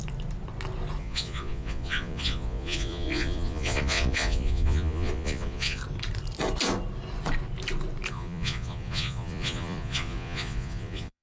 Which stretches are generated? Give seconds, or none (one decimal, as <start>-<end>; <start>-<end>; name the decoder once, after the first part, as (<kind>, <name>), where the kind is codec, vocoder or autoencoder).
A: 1.0-5.8 (vocoder, Vocos); 8.1-11.2